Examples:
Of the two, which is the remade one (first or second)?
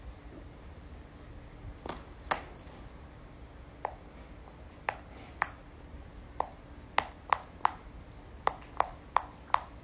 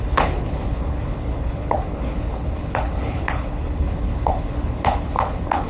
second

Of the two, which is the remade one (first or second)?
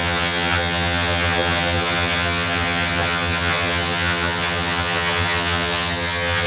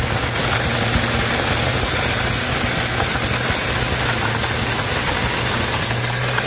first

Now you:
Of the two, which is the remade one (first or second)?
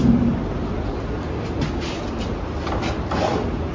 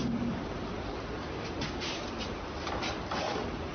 second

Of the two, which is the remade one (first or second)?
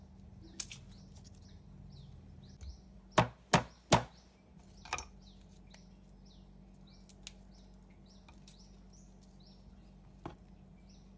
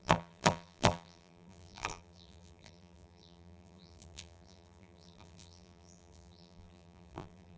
second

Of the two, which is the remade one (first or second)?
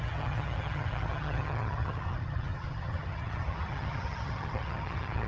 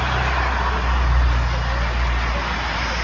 first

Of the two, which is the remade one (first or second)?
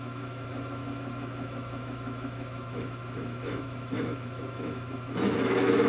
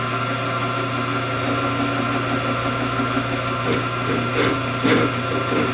first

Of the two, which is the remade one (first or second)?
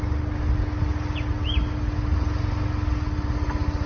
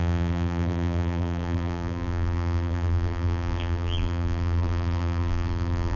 second